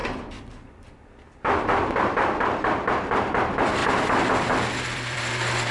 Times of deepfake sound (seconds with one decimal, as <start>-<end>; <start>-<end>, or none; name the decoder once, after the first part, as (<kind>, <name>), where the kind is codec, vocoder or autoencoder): 0.0-3.8 (vocoder, BigVGAN v2); 4.3-5.7